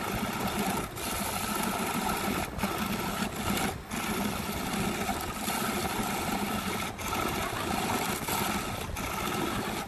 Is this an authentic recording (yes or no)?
yes